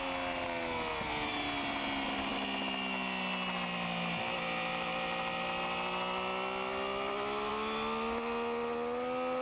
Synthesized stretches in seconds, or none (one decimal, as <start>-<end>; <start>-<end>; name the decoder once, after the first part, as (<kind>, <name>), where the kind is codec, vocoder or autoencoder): none